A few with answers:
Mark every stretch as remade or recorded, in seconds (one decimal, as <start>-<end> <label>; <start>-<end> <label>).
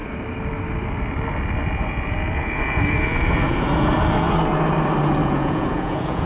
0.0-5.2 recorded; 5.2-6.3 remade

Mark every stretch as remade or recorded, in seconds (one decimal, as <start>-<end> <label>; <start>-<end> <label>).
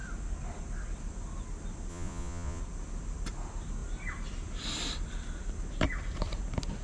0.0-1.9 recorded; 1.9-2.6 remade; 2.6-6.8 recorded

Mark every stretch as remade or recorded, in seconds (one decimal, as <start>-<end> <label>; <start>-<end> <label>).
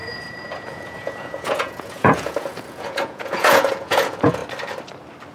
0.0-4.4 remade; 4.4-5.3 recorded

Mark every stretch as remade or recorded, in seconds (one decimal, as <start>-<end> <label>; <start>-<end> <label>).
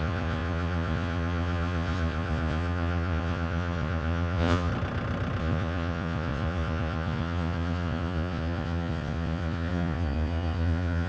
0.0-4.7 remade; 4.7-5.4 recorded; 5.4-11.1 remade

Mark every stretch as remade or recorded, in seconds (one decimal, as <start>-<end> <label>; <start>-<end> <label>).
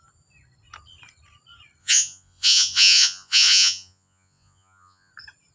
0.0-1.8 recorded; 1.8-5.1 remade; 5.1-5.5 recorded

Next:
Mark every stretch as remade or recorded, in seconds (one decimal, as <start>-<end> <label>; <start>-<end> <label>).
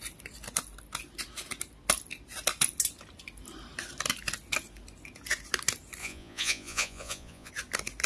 0.0-6.0 recorded; 6.0-7.5 remade; 7.5-8.1 recorded